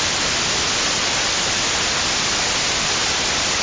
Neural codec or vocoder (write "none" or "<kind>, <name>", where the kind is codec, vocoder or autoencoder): none